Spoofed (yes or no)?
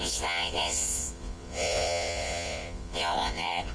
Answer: yes